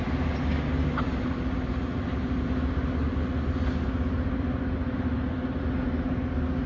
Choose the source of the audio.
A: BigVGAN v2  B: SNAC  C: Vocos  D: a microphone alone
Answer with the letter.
D